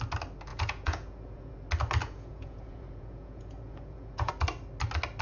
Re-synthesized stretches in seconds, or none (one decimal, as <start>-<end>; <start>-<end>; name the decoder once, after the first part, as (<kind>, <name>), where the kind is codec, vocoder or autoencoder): 0.5-1.5 (vocoder, Vocos); 2.0-4.3